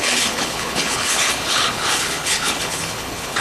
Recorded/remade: remade